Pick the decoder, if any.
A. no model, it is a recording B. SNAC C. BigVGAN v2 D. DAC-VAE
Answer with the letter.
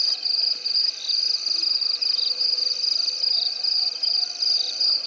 A